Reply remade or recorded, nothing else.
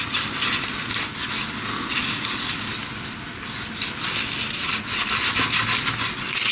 recorded